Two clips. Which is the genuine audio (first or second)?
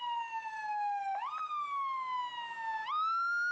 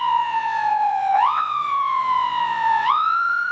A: first